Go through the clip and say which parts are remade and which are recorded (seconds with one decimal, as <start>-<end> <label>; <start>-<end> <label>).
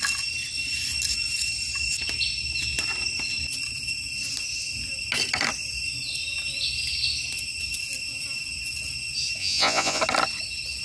0.0-9.4 recorded; 9.4-10.0 remade; 10.0-10.8 recorded